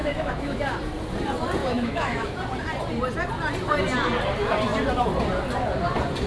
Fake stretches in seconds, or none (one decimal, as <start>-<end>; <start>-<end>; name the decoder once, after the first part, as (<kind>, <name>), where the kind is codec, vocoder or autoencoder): 0.0-0.6 (autoencoder, DAC-VAE); 1.6-2.3